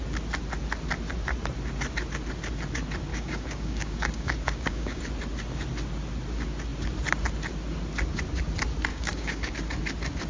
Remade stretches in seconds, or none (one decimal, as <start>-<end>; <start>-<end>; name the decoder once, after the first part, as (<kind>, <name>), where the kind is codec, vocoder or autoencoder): 3.1-5.0 (codec, DAC); 8.9-9.5